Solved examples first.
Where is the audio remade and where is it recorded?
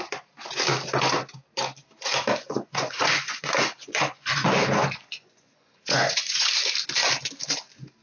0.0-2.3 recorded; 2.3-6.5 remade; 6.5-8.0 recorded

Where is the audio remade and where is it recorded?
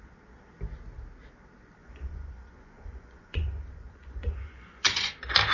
0.0-1.8 recorded; 1.8-5.1 remade; 5.1-5.5 recorded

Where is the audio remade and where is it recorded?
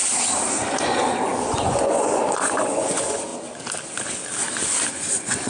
0.0-0.5 recorded; 0.5-3.3 remade; 3.3-4.9 recorded; 4.9-5.5 remade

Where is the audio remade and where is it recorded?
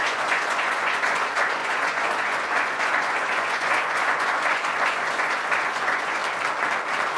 0.0-6.2 remade; 6.2-7.2 recorded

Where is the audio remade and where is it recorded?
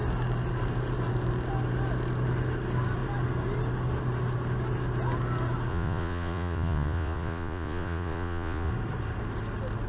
0.0-5.7 recorded; 5.7-8.7 remade; 8.7-9.9 recorded